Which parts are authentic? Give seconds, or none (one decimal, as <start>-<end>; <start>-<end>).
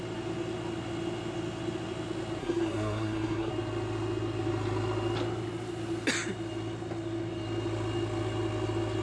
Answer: 0.0-2.4; 3.5-9.0